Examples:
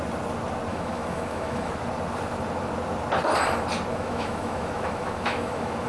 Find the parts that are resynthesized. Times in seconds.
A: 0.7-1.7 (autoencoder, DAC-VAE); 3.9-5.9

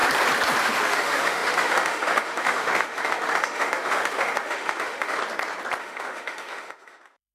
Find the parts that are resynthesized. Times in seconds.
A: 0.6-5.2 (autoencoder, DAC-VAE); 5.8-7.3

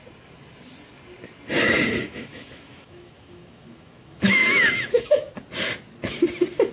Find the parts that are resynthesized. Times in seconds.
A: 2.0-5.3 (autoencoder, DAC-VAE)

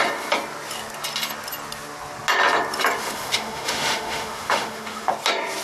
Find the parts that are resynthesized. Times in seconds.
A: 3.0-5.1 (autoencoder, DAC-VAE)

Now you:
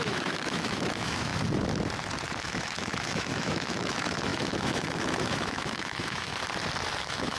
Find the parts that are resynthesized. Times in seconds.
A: 0.0-1.3 (autoencoder, DAC-VAE); 2.4-6.3; 7.0-7.4

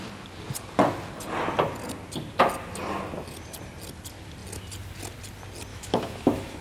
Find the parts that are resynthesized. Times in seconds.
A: 5.7-6.6 (autoencoder, DAC-VAE)

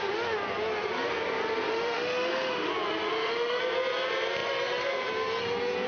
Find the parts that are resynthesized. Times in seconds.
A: 1.7-2.7 (autoencoder, DAC-VAE); 3.1-3.6

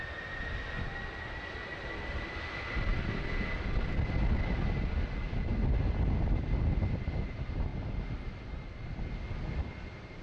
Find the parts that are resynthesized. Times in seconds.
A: none